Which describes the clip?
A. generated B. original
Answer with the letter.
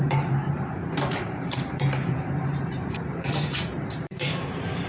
A